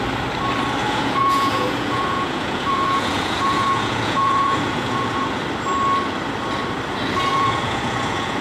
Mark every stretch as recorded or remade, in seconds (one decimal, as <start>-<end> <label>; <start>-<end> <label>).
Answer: 0.0-0.8 recorded; 0.8-5.4 remade; 5.4-7.3 recorded; 7.3-8.4 remade